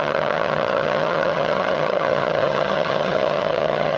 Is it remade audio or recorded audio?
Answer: remade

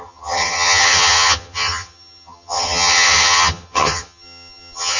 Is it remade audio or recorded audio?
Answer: remade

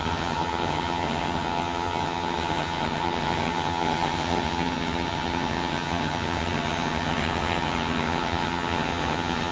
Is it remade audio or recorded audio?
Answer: remade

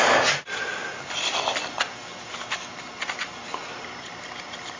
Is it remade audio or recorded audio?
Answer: recorded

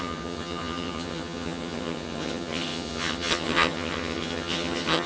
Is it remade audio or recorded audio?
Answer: remade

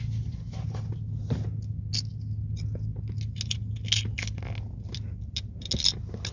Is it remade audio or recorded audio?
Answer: recorded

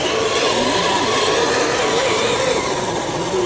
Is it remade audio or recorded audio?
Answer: recorded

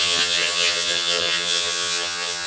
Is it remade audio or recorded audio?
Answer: remade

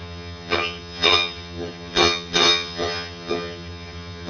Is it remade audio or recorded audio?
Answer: remade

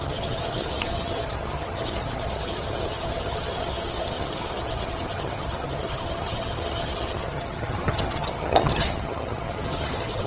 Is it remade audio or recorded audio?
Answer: remade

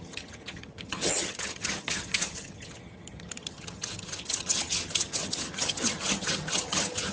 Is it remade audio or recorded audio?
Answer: remade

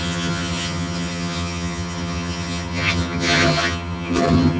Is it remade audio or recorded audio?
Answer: remade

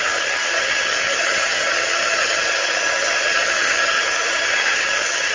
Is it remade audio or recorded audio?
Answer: remade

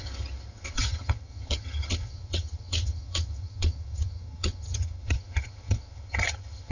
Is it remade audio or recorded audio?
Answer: remade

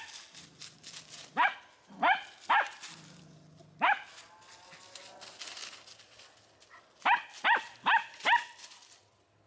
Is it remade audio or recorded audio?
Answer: recorded